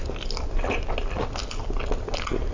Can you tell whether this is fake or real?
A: real